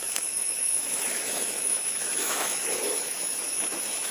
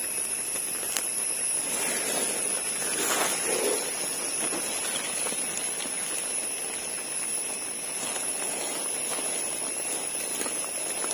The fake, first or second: first